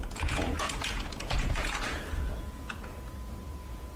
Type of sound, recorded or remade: remade